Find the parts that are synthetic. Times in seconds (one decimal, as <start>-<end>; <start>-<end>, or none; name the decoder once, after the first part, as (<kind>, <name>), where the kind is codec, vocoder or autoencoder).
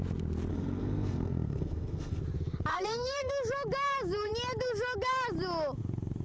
0.5-2.2 (codec, SNAC); 2.7-3.3